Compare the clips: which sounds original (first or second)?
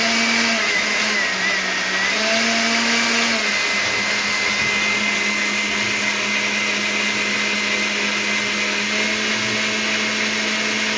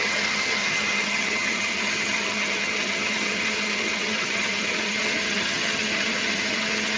first